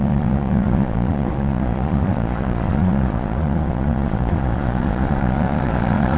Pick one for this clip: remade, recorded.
remade